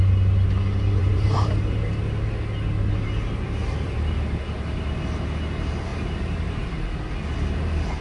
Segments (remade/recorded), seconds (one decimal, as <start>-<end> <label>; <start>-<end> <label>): 0.0-1.0 recorded; 1.0-1.6 remade; 1.6-3.6 recorded; 3.6-4.9 remade; 4.9-5.9 recorded; 5.9-6.9 remade; 6.9-8.0 recorded